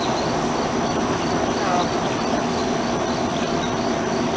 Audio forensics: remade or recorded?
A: recorded